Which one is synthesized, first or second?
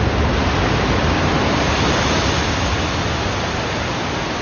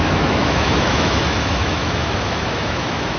second